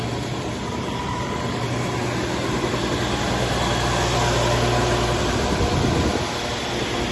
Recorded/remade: recorded